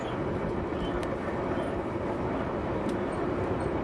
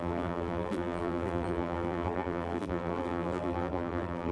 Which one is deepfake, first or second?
second